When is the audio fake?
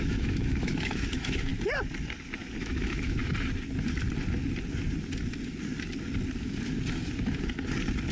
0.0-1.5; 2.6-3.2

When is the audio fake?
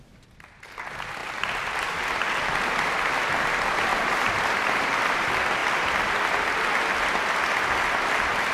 1.2-2.6; 3.9-4.5; 5.6-6.2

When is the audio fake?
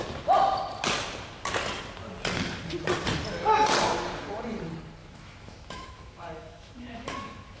5.0-7.6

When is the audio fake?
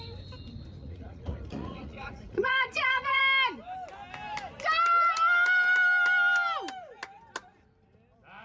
0.8-3.2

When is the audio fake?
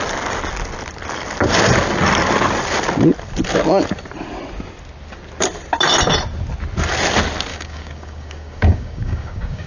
7.5-9.7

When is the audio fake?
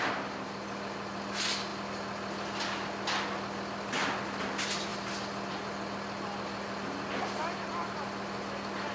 none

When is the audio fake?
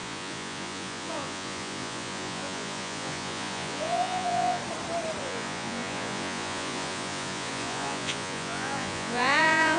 0.0-4.6; 5.2-9.8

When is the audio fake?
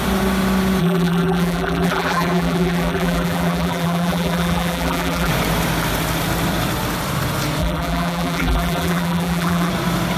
0.8-5.3; 7.6-9.7